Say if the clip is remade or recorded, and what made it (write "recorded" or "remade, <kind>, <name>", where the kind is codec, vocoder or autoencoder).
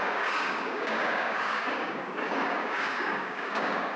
remade, codec, DAC